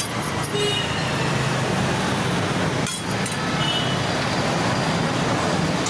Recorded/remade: recorded